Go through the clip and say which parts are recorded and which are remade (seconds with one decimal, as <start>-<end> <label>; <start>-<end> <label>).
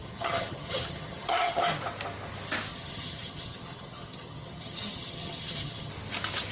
0.0-1.6 remade; 1.6-2.7 recorded; 2.7-5.9 remade; 5.9-6.5 recorded